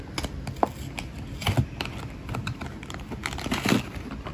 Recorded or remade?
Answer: recorded